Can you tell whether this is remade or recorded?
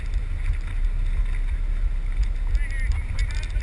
recorded